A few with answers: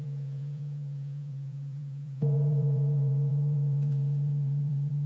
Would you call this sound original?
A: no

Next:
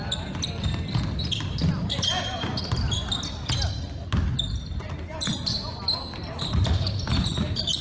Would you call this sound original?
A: yes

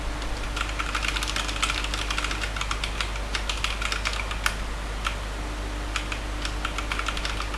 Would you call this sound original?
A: yes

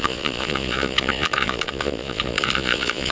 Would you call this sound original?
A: no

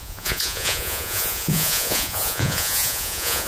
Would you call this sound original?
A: no